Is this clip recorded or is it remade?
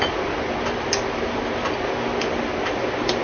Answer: recorded